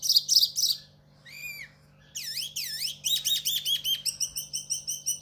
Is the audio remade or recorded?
recorded